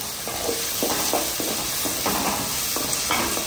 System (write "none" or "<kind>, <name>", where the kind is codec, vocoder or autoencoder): none